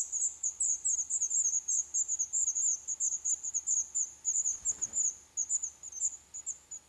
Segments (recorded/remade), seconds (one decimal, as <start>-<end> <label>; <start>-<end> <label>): 0.0-6.9 recorded